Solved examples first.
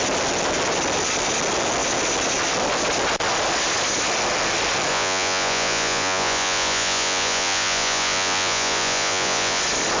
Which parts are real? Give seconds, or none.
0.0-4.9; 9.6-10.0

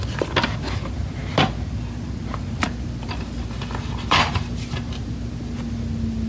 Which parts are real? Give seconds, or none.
0.0-6.3

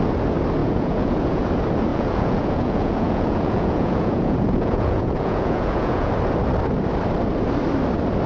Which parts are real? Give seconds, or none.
0.0-0.6; 1.5-1.9; 6.1-8.3

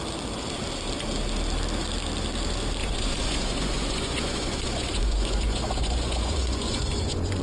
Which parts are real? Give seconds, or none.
0.0-2.8

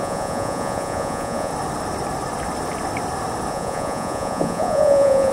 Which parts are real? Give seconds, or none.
1.5-3.5

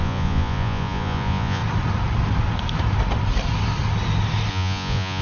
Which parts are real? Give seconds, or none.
1.6-4.5